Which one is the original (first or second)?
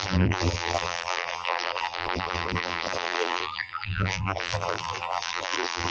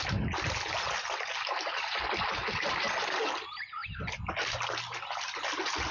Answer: second